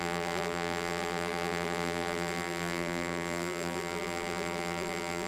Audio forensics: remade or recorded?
remade